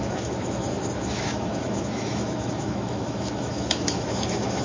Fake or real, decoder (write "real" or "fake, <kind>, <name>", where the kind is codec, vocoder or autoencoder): fake, autoencoder, DAC-VAE